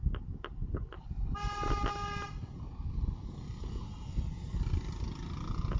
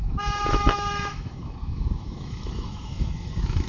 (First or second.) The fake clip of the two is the second